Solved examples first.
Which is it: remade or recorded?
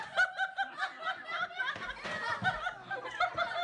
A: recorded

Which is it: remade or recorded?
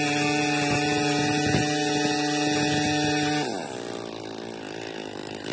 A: recorded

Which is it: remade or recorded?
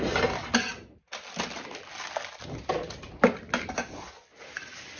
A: recorded